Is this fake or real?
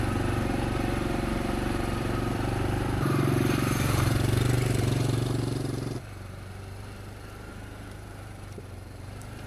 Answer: fake